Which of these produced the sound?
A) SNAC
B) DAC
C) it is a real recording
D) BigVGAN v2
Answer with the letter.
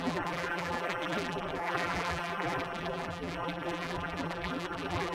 D